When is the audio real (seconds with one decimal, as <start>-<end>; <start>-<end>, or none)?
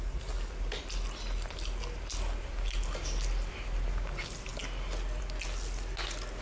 0.0-6.4